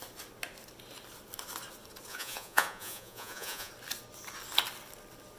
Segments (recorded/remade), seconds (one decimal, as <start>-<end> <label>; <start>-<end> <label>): 0.0-2.1 recorded; 2.1-3.7 remade; 3.7-5.4 recorded